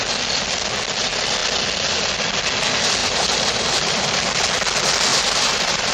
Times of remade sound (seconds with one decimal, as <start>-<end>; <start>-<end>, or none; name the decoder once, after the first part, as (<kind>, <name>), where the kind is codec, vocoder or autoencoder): 3.0-4.1 (vocoder, BigVGAN v2); 5.1-5.9